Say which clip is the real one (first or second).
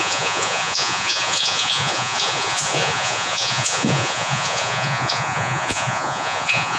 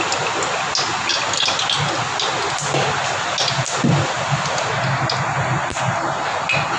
second